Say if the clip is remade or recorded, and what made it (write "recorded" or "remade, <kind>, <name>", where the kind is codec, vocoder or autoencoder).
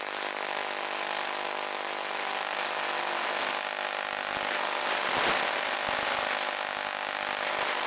recorded